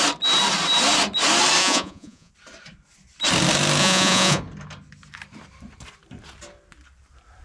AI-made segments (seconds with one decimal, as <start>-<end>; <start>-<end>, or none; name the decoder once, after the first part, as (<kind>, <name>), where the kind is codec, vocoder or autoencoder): 1.6-2.3 (vocoder, Vocos); 3.8-4.4